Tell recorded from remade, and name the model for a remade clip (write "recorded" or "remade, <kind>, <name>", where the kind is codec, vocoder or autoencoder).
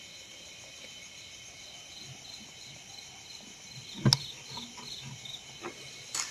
recorded